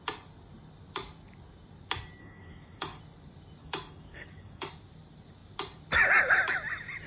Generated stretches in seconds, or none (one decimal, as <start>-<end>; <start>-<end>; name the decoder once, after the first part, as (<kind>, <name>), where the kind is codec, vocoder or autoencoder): 2.2-3.0 (codec, DAC); 3.6-4.7